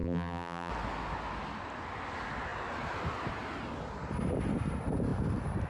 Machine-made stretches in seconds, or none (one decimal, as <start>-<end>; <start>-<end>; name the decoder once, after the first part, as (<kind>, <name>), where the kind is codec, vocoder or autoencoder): 0.0-0.7 (vocoder, BigVGAN v2)